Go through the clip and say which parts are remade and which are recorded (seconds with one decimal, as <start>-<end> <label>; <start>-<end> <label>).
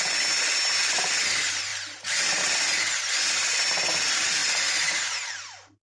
0.0-1.7 recorded; 1.7-2.4 remade; 2.4-4.4 recorded; 4.4-5.8 remade